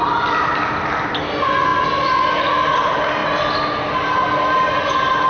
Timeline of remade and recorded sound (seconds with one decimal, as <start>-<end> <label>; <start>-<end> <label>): 0.0-5.3 recorded